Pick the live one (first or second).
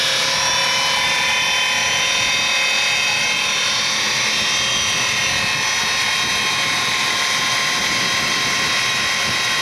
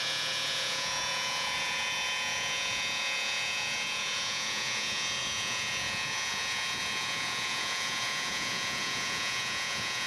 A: first